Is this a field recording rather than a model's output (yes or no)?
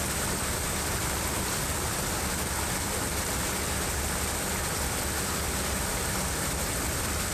yes